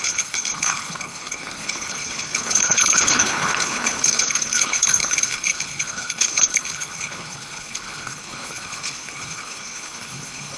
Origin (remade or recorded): remade